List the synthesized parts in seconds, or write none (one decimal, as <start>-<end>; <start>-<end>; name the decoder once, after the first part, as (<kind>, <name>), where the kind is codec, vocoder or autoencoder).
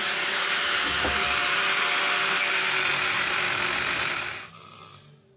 none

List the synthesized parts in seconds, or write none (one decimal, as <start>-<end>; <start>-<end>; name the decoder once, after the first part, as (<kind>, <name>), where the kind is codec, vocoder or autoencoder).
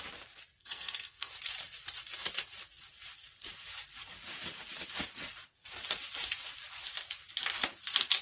0.6-1.3 (codec, SNAC)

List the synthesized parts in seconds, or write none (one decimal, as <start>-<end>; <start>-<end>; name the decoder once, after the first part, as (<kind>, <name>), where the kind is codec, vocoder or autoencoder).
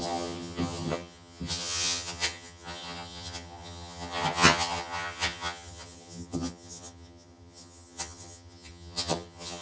0.0-9.6 (vocoder, HiFi-GAN)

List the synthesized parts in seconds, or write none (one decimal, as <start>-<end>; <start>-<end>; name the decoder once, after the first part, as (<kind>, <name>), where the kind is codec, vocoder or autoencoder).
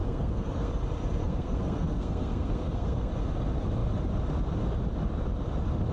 0.0-0.7 (codec, SNAC); 1.2-3.1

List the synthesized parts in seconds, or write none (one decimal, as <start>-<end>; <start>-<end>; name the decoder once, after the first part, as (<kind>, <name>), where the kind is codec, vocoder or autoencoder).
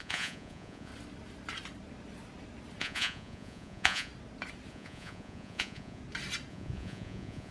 0.0-0.9 (vocoder, Vocos); 2.8-4.1; 4.7-6.0; 6.5-7.5